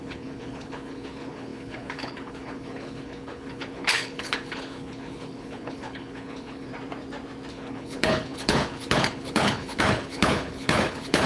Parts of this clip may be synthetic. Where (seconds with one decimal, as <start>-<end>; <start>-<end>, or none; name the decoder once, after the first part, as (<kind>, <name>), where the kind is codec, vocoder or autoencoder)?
0.0-6.7 (codec, HILCodec); 7.5-11.3